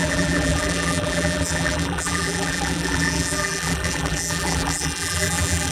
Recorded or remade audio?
remade